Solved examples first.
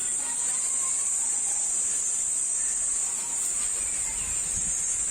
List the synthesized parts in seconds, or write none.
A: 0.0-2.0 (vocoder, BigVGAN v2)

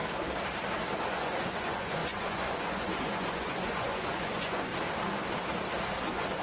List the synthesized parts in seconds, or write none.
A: 1.1-4.7 (vocoder, Vocos); 6.0-6.4

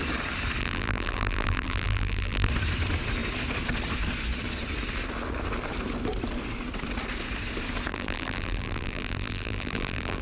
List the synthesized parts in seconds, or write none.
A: 0.6-2.5 (vocoder, BigVGAN v2); 7.9-10.2

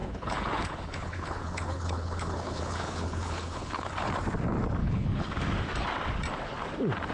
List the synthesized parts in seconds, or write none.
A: 0.0-4.1 (codec, HILCodec); 4.8-5.3